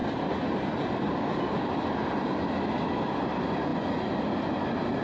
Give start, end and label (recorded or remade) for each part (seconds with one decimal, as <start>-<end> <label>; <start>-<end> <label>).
0.0-5.0 recorded

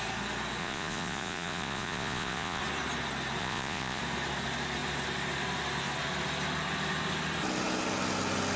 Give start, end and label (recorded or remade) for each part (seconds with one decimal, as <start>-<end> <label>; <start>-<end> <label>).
0.0-0.6 recorded; 0.6-2.6 remade; 2.6-3.4 recorded; 3.4-4.0 remade; 4.0-8.6 recorded

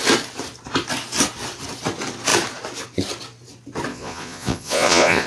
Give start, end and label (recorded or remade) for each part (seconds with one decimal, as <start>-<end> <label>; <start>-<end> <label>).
0.0-3.9 recorded; 3.9-5.3 remade

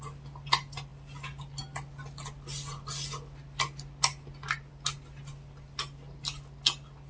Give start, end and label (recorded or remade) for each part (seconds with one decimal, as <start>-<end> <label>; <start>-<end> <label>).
0.0-7.1 recorded

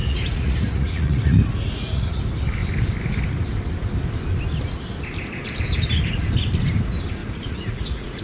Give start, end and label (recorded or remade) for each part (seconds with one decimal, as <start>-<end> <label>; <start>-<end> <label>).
0.0-2.2 remade; 2.2-7.2 recorded; 7.2-8.2 remade